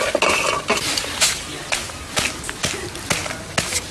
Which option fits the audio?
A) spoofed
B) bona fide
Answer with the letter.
B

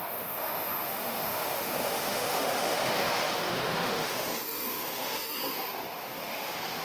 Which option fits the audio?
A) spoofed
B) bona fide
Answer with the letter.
A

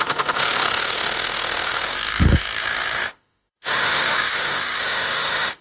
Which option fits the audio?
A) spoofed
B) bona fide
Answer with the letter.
A